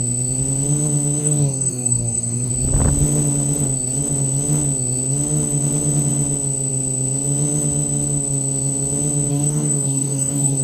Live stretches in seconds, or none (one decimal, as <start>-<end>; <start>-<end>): 0.0-1.2; 2.5-9.3